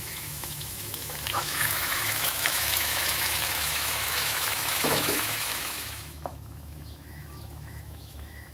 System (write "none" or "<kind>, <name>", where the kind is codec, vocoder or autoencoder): autoencoder, DAC-VAE